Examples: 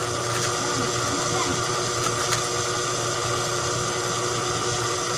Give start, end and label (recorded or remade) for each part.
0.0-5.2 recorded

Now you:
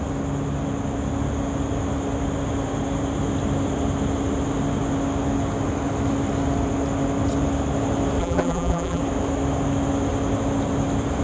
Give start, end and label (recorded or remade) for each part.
0.0-8.2 recorded; 8.2-9.0 remade; 9.0-11.2 recorded

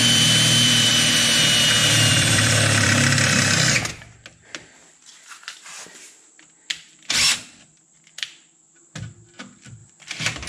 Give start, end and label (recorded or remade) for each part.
0.0-0.9 remade; 0.9-1.8 recorded; 1.8-3.4 remade; 3.4-9.8 recorded; 9.8-10.5 remade